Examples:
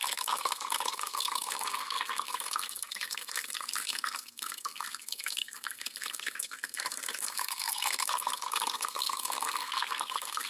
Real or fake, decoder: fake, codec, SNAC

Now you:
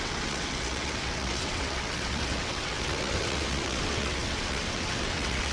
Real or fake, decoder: fake, vocoder, WaveNeXt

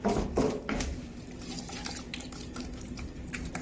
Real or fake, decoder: fake, vocoder, BigVGAN v2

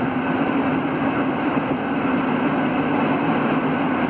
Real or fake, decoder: fake, vocoder, BigVGAN v2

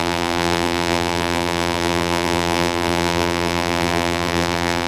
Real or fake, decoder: fake, vocoder, BigVGAN v2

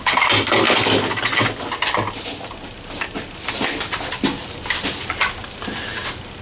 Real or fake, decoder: real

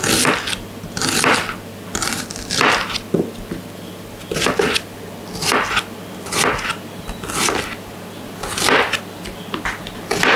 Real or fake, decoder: real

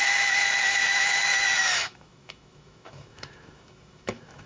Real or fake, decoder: fake, autoencoder, DAC-VAE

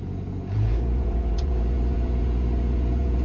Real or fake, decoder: fake, vocoder, Vocos